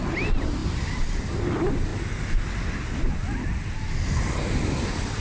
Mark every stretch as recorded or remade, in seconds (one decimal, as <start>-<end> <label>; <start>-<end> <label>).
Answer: 0.0-5.2 recorded